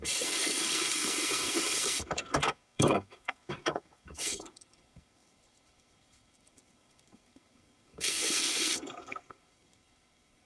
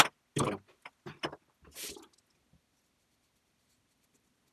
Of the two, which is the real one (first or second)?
second